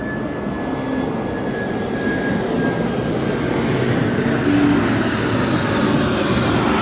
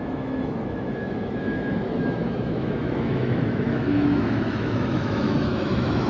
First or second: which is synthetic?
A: second